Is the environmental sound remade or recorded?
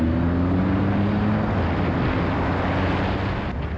recorded